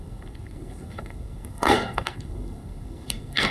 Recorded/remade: remade